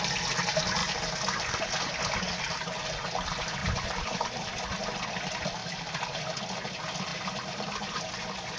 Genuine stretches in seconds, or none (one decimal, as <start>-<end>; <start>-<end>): 0.0-3.6; 4.6-5.6; 6.4-7.1; 8.1-8.6